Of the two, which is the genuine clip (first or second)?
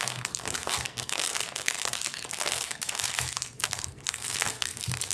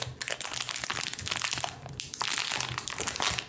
second